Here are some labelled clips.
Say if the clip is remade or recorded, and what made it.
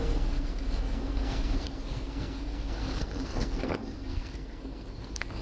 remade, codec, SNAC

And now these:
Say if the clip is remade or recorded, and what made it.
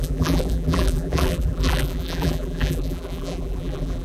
remade, vocoder, BigVGAN v2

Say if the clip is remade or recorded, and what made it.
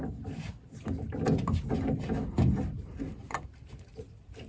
recorded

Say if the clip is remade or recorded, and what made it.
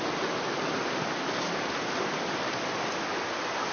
recorded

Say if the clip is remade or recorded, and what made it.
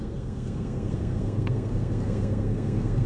remade, codec, SNAC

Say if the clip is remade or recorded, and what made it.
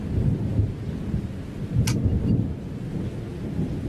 recorded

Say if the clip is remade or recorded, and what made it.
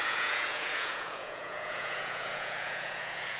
remade, vocoder, Vocos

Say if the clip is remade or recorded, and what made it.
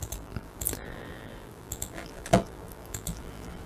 remade, vocoder, BigVGAN v2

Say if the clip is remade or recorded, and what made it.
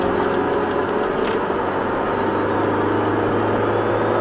recorded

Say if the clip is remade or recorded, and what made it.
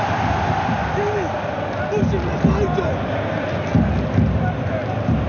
recorded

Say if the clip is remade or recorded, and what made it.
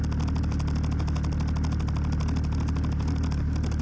recorded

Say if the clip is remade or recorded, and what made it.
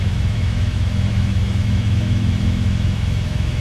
remade, autoencoder, DAC-VAE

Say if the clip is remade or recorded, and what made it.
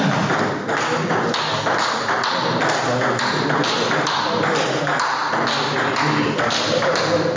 recorded